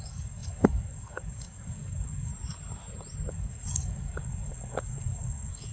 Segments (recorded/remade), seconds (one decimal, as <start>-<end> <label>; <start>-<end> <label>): 0.0-2.3 remade; 2.3-3.3 recorded; 3.3-5.7 remade